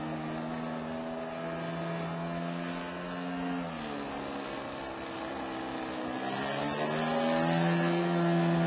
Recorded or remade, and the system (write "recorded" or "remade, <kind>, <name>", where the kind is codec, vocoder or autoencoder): recorded